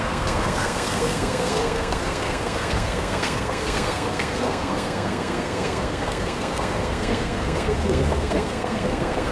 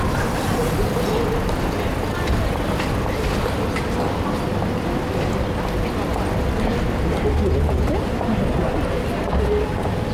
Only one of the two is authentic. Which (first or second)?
second